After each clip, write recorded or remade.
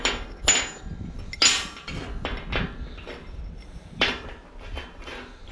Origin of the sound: recorded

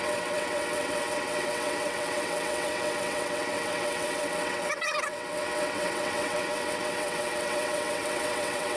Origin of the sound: remade